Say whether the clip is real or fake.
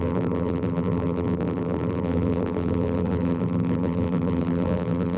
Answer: fake